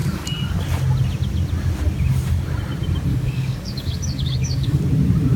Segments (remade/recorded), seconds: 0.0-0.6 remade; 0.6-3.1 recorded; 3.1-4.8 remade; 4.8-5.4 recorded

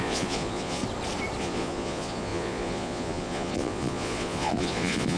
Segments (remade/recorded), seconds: 0.0-0.8 remade; 0.8-1.4 recorded; 1.4-5.2 remade

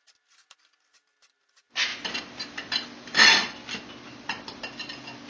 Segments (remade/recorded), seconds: 0.0-5.3 recorded

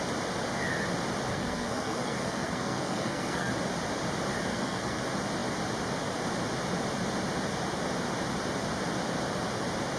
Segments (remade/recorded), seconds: 0.0-1.3 recorded; 1.3-3.5 remade; 3.5-4.5 recorded; 4.5-5.0 remade; 5.0-10.0 recorded